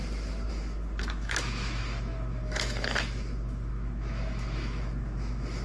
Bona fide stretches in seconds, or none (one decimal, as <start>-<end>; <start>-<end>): 0.0-0.5